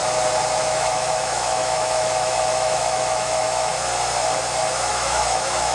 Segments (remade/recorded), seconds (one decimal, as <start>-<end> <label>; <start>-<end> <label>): 0.0-0.6 recorded; 0.6-3.7 remade; 3.7-4.9 recorded; 4.9-5.7 remade